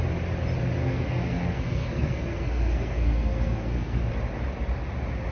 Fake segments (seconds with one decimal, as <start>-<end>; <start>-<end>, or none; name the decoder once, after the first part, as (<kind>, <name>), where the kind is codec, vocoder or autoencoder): 0.8-4.0 (codec, SNAC)